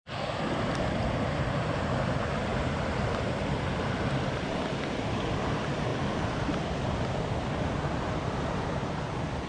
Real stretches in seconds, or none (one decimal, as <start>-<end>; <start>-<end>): 0.0-9.5